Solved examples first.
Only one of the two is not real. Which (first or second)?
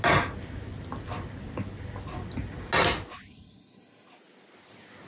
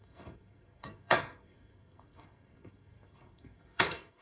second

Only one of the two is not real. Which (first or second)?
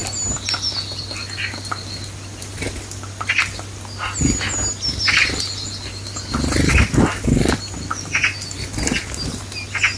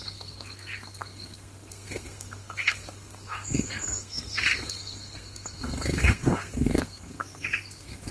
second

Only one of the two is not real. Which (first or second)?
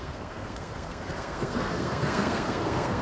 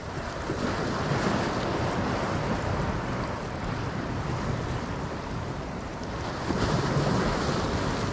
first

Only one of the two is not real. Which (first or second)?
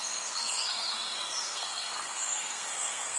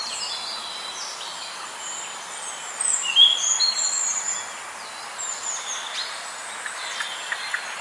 first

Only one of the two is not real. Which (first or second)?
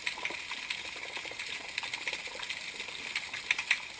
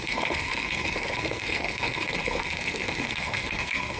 second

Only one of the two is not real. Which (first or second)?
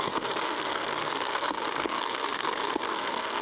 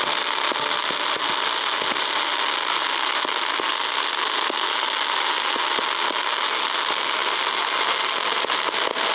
first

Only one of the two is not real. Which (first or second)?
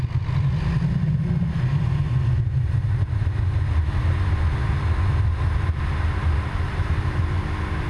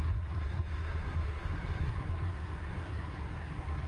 second